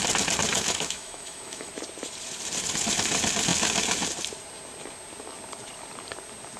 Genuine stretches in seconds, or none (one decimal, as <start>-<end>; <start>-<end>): 0.0-0.5; 1.7-6.6